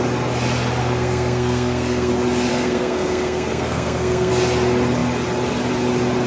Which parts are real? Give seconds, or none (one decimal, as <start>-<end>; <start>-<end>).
0.0-0.8; 2.1-2.5; 4.3-6.3